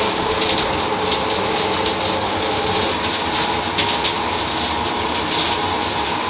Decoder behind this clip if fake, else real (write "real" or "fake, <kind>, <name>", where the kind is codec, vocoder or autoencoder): real